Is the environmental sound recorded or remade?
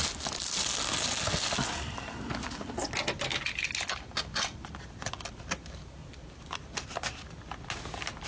recorded